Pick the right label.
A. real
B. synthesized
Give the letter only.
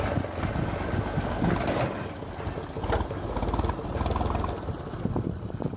A